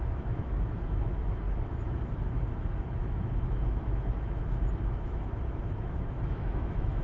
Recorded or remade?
remade